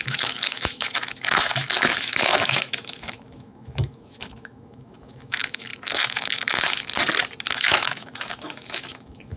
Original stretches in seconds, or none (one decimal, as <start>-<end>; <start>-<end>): 6.9-7.5